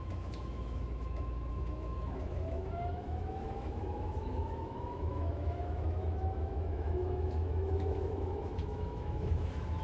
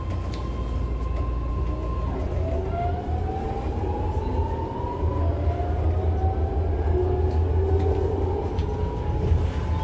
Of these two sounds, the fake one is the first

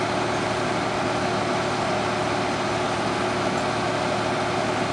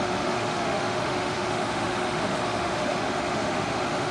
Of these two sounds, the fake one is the second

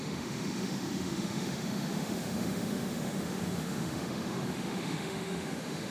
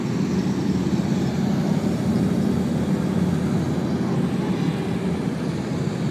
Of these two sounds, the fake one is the first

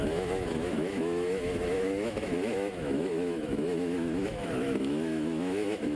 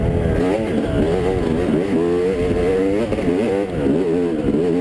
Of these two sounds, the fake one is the first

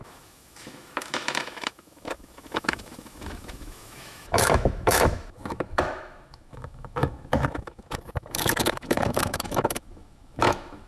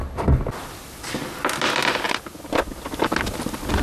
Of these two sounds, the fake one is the first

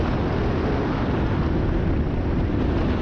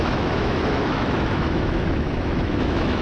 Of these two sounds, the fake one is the second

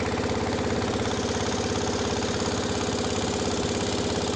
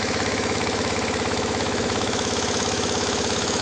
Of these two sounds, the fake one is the second